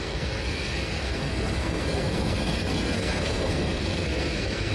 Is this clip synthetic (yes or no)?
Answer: yes